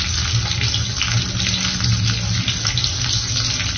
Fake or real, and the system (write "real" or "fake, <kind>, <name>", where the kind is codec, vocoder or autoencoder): real